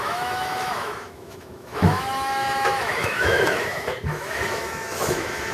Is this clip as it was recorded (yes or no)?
no